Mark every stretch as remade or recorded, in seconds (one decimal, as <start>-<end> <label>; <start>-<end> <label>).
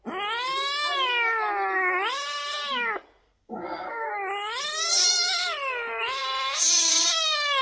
0.0-3.2 recorded; 3.2-4.1 remade; 4.1-7.6 recorded